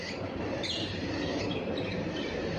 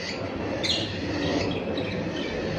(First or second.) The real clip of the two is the second